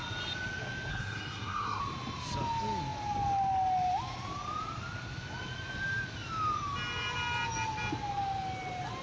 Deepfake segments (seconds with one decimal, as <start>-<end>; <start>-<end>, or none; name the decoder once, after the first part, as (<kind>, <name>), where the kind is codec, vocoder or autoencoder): 0.9-1.8 (codec, SNAC)